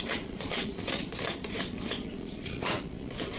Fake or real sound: fake